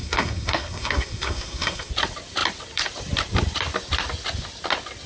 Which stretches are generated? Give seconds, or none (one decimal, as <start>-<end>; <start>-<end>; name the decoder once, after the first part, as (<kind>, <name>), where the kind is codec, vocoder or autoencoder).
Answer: 0.0-1.9 (codec, SNAC)